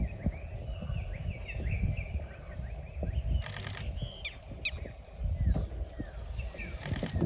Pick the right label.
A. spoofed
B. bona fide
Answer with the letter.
B